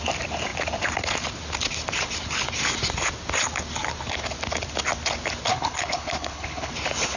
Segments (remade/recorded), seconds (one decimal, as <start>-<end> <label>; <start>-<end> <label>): 0.0-5.5 recorded; 5.5-6.7 remade; 6.7-7.2 recorded